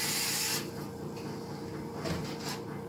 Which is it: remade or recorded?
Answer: recorded